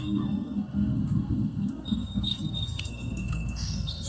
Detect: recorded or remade remade